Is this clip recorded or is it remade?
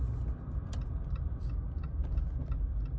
recorded